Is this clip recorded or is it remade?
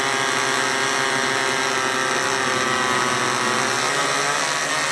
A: recorded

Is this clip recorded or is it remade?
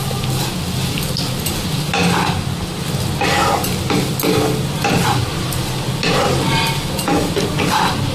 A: recorded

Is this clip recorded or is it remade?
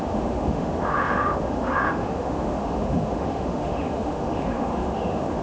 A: remade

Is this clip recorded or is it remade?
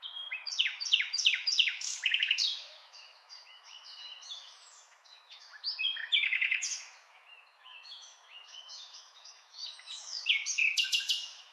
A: remade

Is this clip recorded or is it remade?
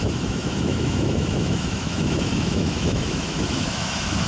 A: remade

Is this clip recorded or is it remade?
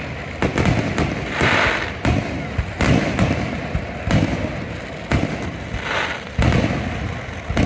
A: recorded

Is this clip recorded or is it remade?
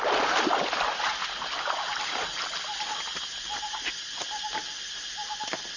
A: recorded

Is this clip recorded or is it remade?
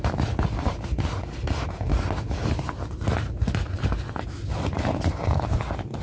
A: recorded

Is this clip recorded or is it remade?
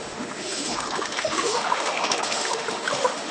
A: remade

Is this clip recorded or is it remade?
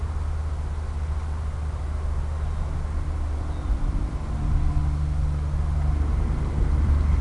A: recorded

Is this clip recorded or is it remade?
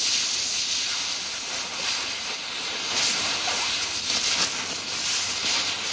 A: recorded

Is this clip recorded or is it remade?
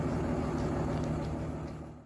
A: recorded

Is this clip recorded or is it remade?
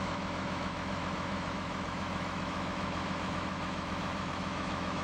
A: remade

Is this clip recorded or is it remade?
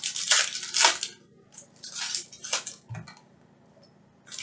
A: recorded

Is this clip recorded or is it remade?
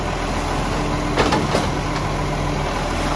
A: recorded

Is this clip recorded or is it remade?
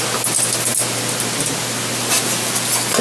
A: recorded